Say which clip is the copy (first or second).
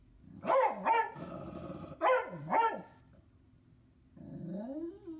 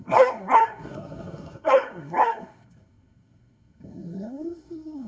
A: second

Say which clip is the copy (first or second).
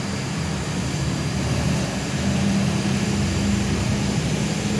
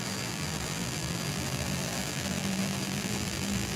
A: second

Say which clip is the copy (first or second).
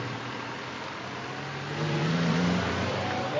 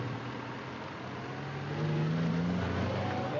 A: first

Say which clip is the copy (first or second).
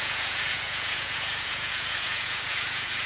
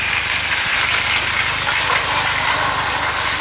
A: first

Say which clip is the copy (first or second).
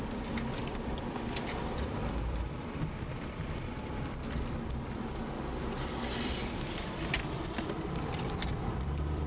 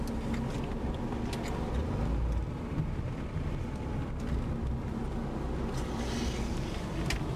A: first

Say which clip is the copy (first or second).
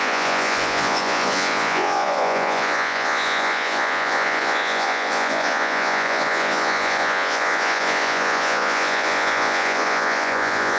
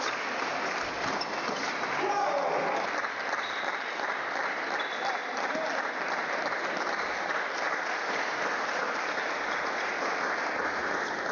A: first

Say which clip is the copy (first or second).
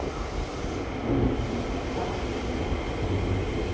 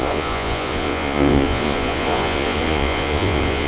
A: second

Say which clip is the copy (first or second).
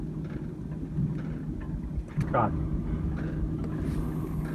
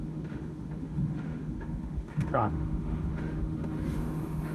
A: second